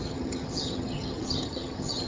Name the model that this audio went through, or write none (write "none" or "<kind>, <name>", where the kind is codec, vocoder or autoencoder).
vocoder, HiFi-GAN